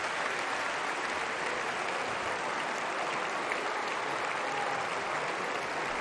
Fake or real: real